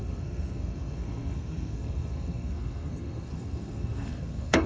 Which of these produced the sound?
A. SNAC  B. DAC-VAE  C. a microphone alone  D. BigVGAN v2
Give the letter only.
A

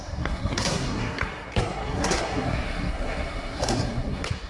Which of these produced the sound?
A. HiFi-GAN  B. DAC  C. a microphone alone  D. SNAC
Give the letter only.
D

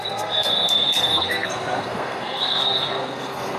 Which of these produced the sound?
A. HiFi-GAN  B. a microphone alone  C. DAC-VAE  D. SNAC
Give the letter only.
D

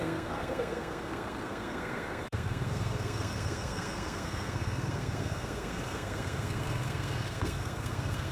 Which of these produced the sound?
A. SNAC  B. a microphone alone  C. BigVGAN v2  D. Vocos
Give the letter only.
A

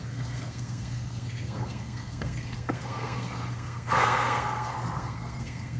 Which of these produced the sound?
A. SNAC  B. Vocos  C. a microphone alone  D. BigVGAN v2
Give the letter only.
A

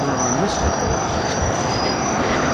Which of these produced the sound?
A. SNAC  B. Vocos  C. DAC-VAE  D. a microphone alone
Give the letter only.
D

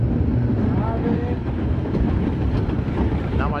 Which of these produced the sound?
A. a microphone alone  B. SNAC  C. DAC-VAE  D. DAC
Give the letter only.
A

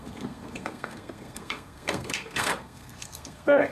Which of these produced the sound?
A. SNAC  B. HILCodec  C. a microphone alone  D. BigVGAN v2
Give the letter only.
A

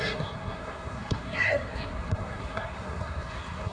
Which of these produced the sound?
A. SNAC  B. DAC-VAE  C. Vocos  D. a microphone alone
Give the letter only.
A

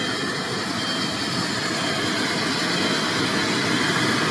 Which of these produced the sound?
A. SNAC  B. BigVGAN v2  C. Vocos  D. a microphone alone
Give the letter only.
D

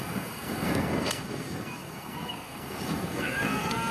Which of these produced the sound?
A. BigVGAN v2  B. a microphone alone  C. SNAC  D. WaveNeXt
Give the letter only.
C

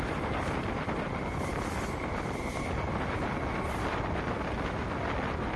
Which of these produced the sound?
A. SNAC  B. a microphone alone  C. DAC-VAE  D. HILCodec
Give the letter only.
B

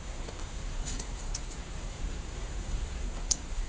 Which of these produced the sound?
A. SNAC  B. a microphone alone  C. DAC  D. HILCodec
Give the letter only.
A